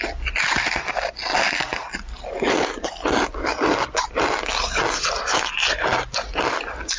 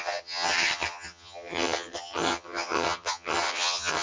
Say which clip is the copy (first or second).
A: second